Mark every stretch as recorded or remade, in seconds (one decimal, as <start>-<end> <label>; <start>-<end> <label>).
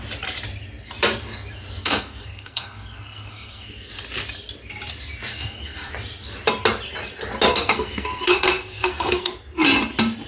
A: 0.0-1.8 recorded; 1.8-3.9 remade; 3.9-5.3 recorded; 5.3-5.9 remade; 5.9-7.5 recorded; 7.5-9.3 remade; 9.3-10.3 recorded